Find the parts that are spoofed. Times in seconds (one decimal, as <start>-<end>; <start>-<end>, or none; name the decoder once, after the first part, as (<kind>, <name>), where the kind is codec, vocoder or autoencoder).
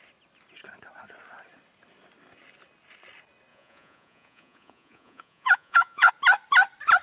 3.5-6.1 (vocoder, Vocos)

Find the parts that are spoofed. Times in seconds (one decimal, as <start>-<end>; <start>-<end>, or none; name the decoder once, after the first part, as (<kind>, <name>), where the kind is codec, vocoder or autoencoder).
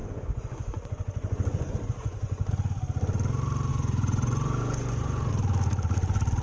0.0-2.5 (vocoder, Vocos); 3.7-5.3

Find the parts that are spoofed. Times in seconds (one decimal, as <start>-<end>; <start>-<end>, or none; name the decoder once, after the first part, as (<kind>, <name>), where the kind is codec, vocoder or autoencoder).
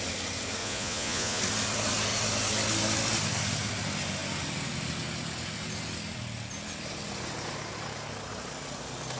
0.6-1.4 (vocoder, Vocos)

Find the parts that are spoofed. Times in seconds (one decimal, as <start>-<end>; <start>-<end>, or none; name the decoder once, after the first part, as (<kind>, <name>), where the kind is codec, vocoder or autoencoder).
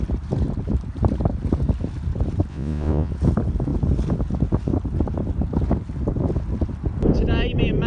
2.5-3.1 (vocoder, Vocos)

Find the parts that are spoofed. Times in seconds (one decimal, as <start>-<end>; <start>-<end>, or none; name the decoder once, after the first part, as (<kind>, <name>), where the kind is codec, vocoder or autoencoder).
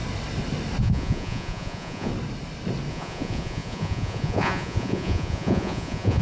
0.8-2.1 (vocoder, Vocos); 2.9-6.2